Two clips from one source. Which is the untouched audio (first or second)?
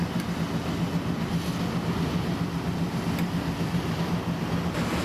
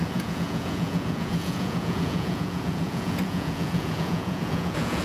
first